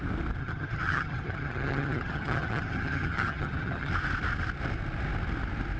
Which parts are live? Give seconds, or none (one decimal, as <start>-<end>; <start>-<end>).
0.0-0.4; 3.9-5.8